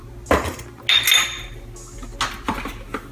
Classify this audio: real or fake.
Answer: real